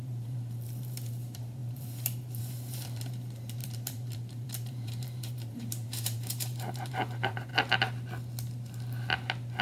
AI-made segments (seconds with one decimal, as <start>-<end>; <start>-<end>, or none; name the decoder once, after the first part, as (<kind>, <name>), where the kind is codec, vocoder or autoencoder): 0.0-7.5 (vocoder, BigVGAN v2)